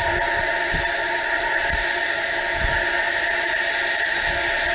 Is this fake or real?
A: real